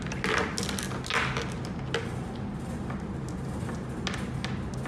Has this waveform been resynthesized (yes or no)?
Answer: no